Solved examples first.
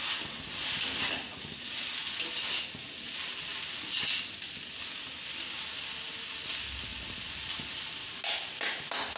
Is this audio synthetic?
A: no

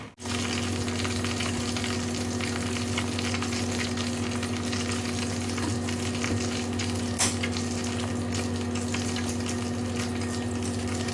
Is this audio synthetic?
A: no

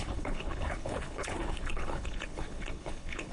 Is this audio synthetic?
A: yes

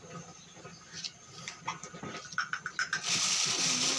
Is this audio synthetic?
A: no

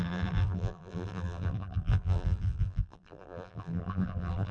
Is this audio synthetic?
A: yes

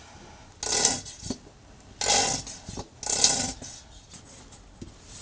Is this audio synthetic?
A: no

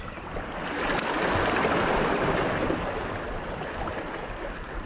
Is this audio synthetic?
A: no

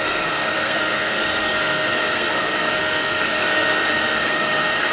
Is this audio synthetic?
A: yes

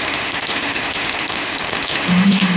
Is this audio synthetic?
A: yes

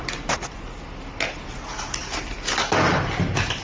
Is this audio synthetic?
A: no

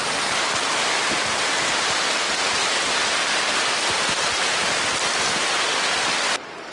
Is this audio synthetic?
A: no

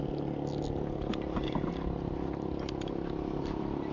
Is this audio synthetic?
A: no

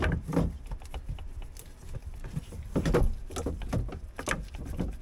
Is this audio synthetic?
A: no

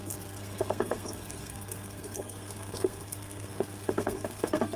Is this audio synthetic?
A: yes